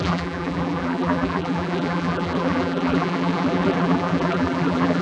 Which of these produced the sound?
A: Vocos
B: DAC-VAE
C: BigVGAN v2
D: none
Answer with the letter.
C